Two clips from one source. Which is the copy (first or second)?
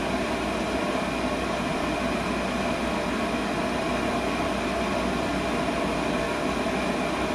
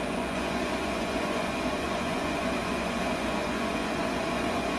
second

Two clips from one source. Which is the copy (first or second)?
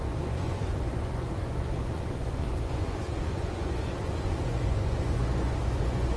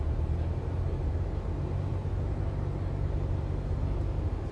first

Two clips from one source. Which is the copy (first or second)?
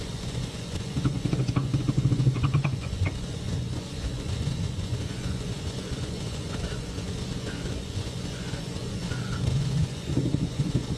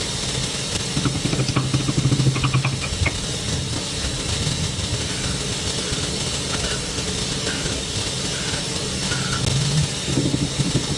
first